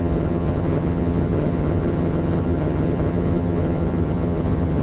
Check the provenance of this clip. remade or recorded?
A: remade